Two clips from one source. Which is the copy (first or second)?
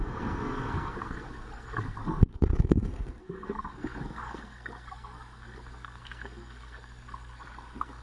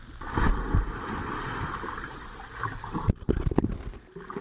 first